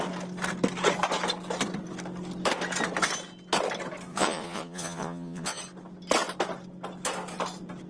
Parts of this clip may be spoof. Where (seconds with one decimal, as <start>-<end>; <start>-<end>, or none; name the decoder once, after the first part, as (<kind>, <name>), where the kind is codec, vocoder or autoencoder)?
4.1-5.6 (vocoder, Vocos)